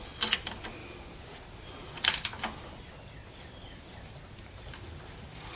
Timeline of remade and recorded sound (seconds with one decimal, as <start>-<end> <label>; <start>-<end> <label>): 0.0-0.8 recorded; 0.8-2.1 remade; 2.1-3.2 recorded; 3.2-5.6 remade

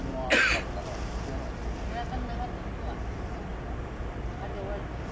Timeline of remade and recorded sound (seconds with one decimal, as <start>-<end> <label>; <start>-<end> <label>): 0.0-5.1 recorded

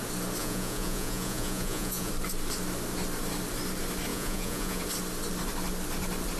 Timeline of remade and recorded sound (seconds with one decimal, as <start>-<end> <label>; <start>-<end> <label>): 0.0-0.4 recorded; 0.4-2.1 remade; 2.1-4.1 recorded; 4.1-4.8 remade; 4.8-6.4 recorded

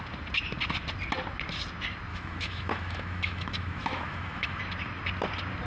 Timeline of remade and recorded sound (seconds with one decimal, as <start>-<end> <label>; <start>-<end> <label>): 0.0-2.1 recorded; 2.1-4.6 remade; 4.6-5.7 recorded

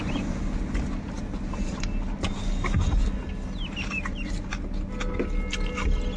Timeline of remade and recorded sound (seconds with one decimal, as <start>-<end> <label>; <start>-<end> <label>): 0.0-6.2 recorded